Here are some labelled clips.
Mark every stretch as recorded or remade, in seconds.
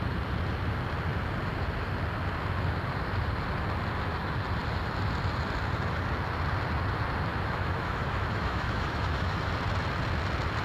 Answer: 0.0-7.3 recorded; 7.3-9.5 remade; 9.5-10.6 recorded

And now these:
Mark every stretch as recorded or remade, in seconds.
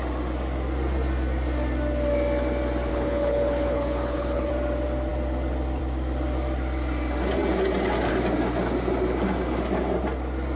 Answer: 0.0-2.9 recorded; 2.9-4.5 remade; 4.5-10.6 recorded